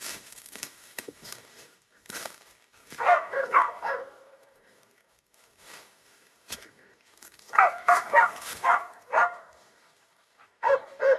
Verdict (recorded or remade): remade